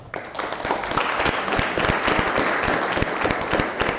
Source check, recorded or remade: recorded